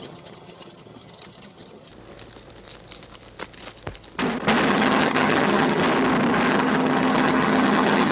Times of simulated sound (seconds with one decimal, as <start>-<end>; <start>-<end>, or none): 0.0-1.9; 4.7-5.8; 6.5-8.1